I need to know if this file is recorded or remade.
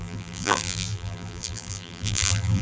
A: remade